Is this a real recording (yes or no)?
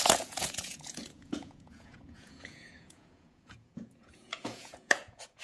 no